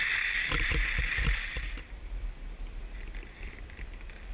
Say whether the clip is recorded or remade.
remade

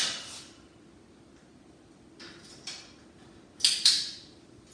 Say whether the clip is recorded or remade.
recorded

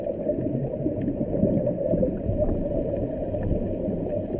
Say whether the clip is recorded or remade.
recorded